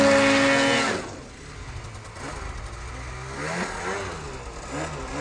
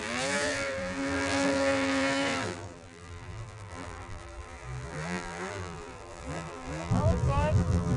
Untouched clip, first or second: first